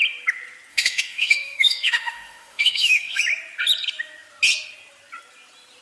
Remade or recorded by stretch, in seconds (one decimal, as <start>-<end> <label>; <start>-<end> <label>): 0.0-0.7 recorded; 0.7-3.2 remade; 3.2-5.8 recorded